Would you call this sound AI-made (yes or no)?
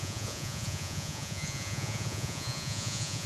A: yes